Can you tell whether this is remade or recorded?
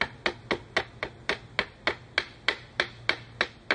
recorded